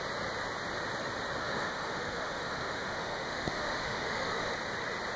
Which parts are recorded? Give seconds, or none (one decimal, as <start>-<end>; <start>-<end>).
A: 0.0-1.4; 4.5-5.2

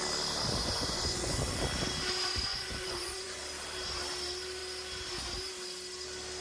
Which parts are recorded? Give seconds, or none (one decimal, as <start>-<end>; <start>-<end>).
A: 0.0-0.6; 1.4-2.5; 3.4-6.4

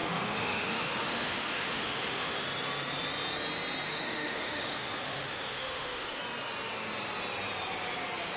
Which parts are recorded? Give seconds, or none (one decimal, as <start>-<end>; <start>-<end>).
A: 2.4-3.9; 6.2-8.4

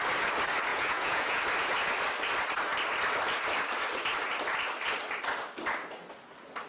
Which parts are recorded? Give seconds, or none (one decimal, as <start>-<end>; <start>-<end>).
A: 0.0-0.7; 1.4-6.7

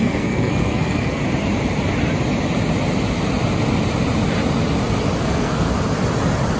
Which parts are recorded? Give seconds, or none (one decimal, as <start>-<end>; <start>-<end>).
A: 1.2-5.2; 5.7-6.6

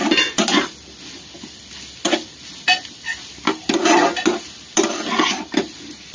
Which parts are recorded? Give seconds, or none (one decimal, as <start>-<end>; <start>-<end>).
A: 0.0-6.1